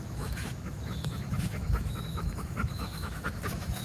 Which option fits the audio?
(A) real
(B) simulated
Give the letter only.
B